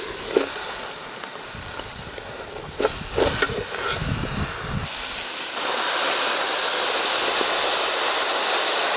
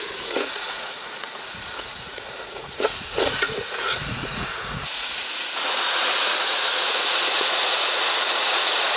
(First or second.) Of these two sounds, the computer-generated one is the second